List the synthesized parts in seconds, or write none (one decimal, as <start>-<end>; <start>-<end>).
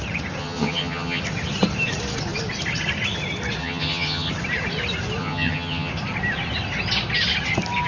0.4-1.2; 3.6-4.3; 5.2-5.9